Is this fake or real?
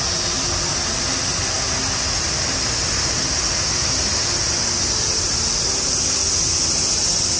real